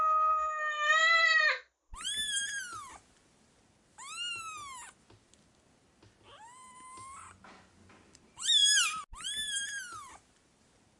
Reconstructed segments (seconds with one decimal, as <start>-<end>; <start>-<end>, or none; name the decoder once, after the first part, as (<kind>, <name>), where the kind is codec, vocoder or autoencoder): none